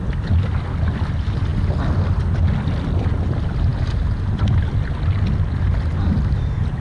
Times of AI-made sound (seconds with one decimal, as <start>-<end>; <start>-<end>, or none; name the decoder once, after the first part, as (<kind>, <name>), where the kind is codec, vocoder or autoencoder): none